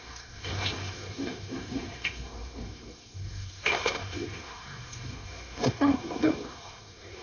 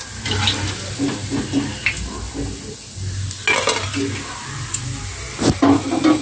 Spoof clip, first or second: first